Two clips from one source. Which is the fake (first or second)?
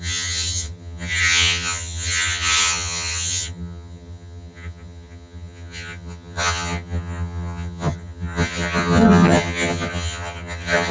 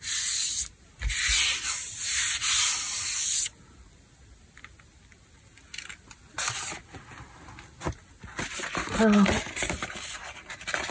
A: first